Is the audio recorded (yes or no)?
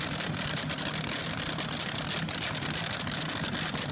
yes